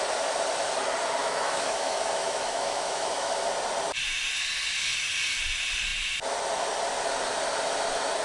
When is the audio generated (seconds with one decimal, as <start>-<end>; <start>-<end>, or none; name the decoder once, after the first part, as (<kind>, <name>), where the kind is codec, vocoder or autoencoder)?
1.2-3.5 (autoencoder, DAC-VAE)